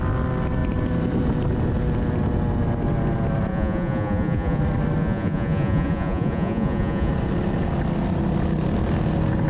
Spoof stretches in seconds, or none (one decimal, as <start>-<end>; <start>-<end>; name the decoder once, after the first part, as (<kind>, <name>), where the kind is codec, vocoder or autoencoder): 3.5-4.6 (vocoder, Vocos); 5.0-7.1